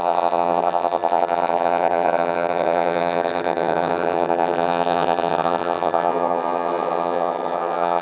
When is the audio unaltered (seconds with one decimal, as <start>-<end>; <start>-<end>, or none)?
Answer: none

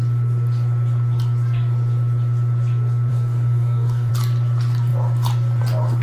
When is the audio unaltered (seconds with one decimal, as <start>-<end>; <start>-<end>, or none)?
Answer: 0.0-3.1; 4.1-6.0

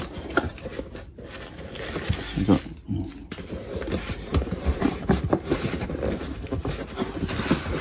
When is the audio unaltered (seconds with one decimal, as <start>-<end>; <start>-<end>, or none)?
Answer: 0.0-4.3; 6.7-7.8

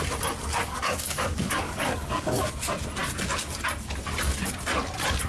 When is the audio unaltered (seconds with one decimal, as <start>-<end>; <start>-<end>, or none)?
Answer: 0.0-0.6; 2.5-5.3

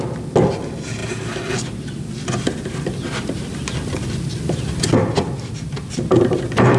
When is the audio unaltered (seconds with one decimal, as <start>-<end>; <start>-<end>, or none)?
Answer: 0.0-6.8